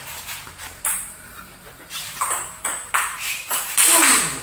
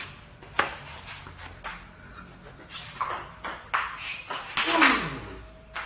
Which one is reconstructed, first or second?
first